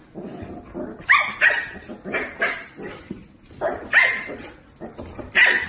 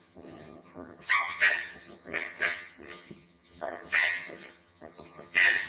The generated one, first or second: second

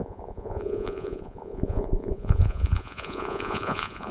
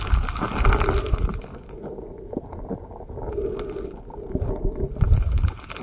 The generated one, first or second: first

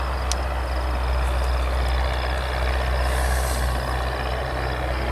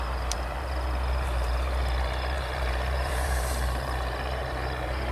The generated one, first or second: second